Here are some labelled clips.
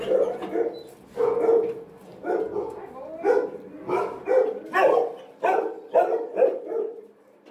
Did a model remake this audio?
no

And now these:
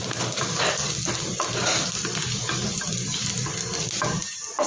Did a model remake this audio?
yes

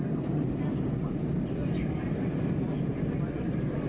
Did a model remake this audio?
no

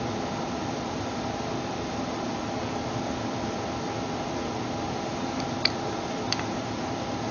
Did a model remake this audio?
yes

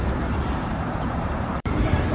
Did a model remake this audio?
yes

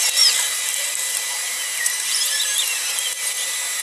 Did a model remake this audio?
yes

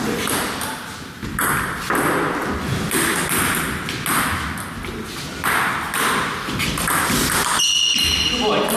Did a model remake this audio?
no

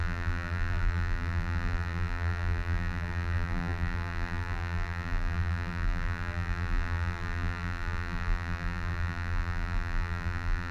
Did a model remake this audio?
yes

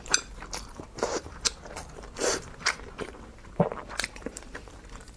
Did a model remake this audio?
yes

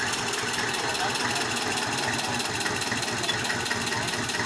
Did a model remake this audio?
no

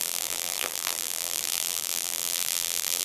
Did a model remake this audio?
yes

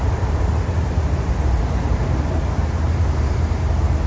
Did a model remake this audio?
yes